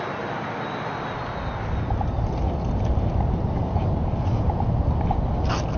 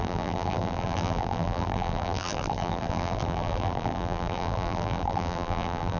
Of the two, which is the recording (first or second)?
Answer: first